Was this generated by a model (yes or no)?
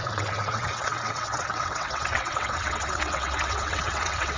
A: yes